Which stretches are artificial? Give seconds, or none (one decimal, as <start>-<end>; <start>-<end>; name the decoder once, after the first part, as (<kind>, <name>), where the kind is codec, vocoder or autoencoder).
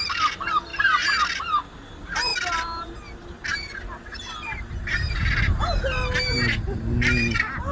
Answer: none